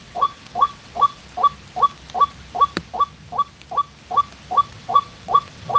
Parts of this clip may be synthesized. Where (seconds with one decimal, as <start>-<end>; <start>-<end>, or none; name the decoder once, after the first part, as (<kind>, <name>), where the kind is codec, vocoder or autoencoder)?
0.0-1.2 (vocoder, WaveNeXt); 4.7-5.8